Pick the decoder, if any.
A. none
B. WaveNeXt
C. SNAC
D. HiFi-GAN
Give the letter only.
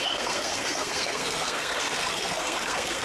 C